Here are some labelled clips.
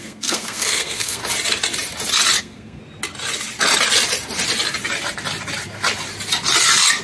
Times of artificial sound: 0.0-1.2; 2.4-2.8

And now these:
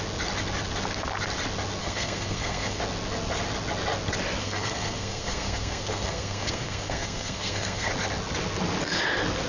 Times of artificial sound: 1.8-2.8; 4.4-7.9

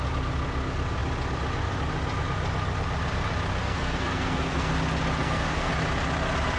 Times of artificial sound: 3.6-4.7; 5.2-5.7

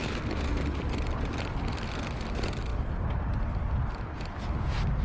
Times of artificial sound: none

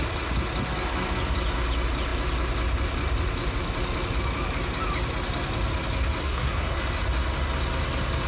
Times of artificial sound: 6.2-6.8

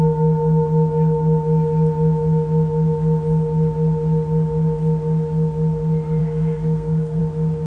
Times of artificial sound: 6.2-7.2

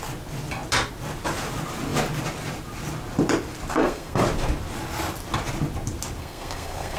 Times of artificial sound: 3.7-4.2; 6.2-7.0

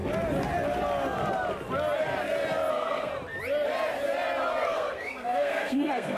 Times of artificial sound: 2.7-3.1; 4.5-6.2